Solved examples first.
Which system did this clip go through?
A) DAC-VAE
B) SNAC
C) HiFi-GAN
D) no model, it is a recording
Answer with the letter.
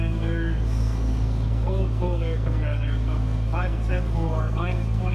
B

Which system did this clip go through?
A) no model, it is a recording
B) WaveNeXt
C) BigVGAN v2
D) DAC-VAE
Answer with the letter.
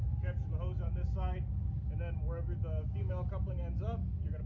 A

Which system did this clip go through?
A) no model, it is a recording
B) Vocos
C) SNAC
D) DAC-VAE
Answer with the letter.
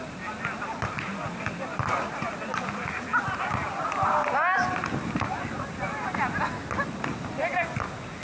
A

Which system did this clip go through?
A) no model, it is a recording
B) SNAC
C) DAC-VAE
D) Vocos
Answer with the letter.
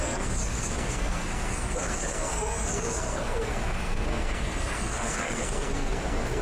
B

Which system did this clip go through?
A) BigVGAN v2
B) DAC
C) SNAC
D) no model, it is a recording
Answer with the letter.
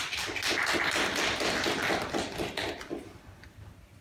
D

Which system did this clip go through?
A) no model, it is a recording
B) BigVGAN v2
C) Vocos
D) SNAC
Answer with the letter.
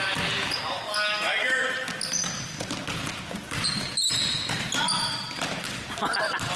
A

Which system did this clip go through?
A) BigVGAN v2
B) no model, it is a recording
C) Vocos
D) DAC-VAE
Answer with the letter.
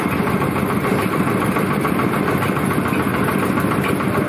B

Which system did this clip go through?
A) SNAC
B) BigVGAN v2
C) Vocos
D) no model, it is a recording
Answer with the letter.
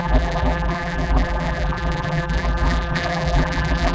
B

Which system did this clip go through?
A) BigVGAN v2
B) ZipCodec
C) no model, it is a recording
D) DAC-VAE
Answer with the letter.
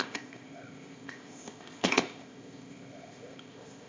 B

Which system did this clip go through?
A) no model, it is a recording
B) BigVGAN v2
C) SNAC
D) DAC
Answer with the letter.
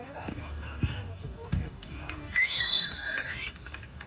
D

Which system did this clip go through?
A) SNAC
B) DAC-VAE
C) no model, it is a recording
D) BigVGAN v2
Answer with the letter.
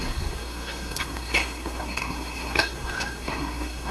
A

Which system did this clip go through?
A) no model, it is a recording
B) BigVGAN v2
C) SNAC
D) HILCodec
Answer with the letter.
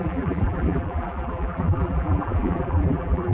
B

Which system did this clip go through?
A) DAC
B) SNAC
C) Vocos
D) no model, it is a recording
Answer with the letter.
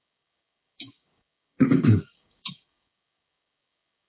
A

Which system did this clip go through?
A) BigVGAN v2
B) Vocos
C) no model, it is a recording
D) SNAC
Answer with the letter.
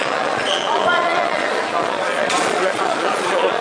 B